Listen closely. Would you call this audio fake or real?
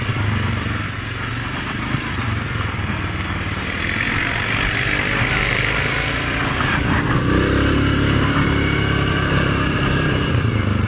fake